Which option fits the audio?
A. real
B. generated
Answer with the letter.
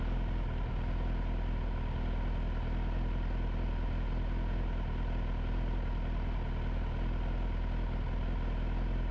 A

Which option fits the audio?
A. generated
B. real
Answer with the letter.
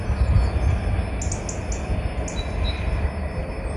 B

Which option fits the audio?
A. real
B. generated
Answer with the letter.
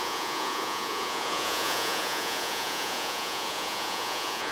B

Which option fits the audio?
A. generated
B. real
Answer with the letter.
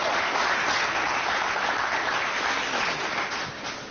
B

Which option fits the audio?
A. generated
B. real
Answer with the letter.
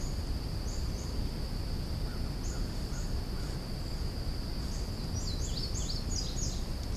B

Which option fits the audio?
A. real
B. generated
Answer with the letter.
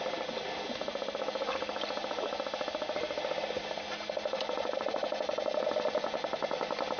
A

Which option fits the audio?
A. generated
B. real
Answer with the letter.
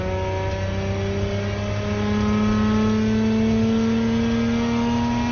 B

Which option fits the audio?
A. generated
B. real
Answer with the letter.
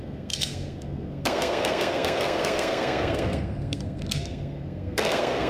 A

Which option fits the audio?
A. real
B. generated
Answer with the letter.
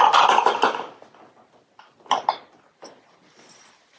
A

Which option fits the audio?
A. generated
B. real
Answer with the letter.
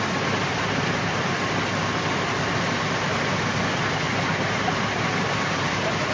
B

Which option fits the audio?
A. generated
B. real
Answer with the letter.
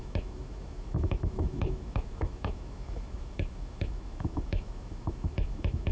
A